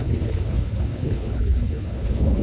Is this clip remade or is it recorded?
remade